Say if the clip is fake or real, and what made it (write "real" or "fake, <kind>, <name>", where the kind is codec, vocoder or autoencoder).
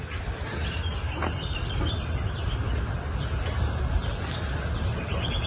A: real